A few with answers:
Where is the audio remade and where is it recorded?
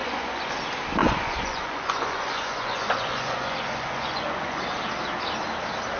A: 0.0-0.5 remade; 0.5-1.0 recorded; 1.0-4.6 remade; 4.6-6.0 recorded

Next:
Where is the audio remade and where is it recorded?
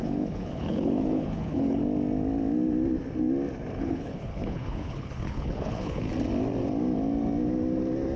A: 0.0-1.8 remade; 1.8-3.8 recorded; 3.8-6.1 remade; 6.1-8.2 recorded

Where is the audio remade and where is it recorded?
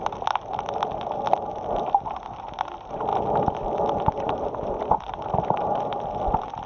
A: 0.0-6.7 recorded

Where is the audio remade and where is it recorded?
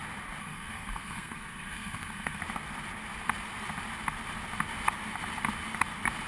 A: 0.0-0.4 recorded; 0.4-2.4 remade; 2.4-6.3 recorded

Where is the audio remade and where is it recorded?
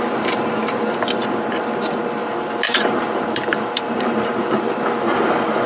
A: 0.0-2.2 recorded; 2.2-4.6 remade; 4.6-5.7 recorded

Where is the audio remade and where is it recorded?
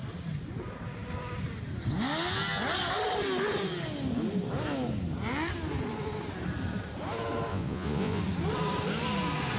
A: 0.0-7.5 recorded; 7.5-8.2 remade; 8.2-9.6 recorded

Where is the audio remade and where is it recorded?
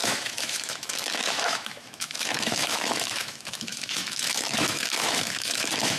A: 0.0-6.0 remade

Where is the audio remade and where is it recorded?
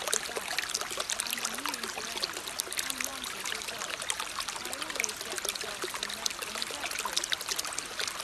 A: 0.0-8.2 recorded